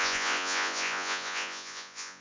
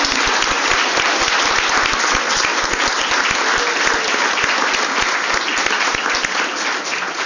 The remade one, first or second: first